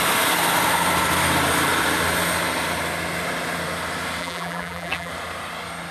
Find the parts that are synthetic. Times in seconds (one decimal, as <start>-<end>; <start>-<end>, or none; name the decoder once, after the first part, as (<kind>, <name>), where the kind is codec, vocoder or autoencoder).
4.2-5.1 (vocoder, BigVGAN v2)